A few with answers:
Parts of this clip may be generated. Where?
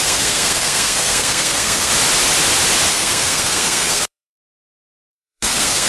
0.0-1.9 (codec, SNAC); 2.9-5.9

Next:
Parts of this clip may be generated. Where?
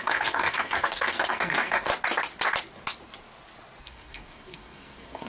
0.0-1.9 (codec, SNAC); 3.8-5.3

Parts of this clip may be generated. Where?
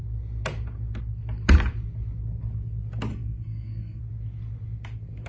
3.1-4.0 (codec, SNAC)